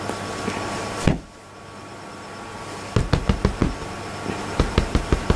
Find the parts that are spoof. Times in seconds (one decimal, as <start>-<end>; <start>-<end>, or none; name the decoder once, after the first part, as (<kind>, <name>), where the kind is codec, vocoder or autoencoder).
none